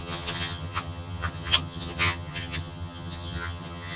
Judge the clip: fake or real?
fake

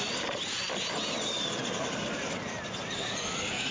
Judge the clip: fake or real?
real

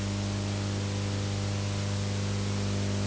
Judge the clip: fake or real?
real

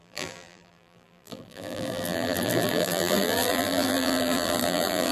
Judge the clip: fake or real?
fake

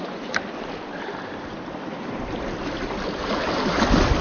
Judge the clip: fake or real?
fake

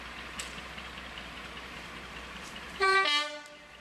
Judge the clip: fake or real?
fake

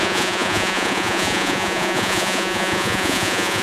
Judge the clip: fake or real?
fake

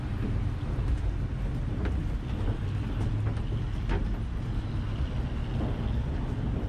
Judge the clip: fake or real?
real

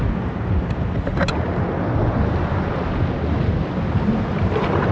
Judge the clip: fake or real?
real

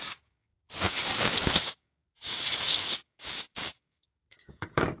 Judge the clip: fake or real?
fake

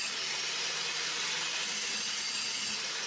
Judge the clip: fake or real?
real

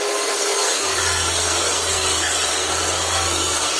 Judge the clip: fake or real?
fake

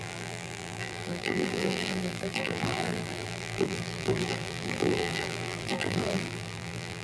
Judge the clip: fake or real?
fake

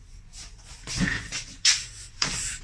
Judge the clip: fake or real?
fake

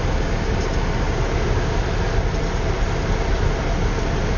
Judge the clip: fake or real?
real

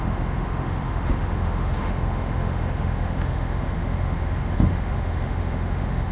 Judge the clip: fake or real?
fake